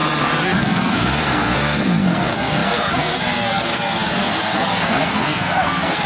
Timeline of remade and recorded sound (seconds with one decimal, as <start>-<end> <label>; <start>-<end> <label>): 0.0-0.6 recorded; 0.6-6.1 remade